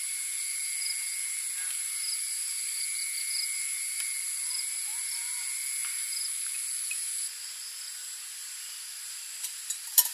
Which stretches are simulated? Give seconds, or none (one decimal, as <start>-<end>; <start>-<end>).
none